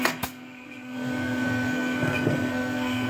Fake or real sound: fake